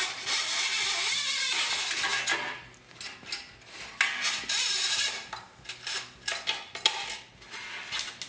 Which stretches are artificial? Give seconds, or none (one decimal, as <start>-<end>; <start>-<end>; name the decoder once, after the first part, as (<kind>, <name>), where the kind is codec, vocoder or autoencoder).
none